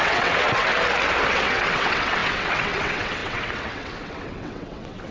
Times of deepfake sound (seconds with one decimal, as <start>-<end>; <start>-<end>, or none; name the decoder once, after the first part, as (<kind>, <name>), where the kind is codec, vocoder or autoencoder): 0.0-0.7 (vocoder, WaveNeXt); 1.3-5.1